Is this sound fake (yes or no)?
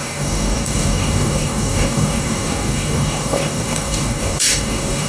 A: yes